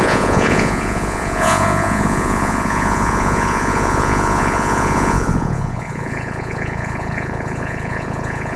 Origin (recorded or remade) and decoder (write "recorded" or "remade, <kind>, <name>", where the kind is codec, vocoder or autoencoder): remade, vocoder, Vocos